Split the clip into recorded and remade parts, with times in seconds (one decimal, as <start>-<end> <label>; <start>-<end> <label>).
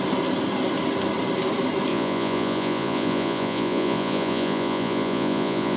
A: 0.0-1.9 recorded; 1.9-5.8 remade